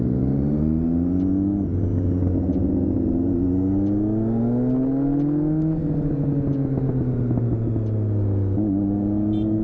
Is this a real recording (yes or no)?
yes